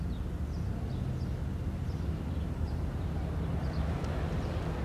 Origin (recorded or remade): recorded